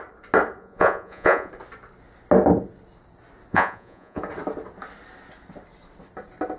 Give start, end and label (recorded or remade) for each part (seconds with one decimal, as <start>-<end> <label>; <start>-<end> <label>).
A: 0.0-0.6 recorded; 0.6-1.5 remade; 1.5-3.5 recorded; 3.5-4.2 remade; 4.2-6.6 recorded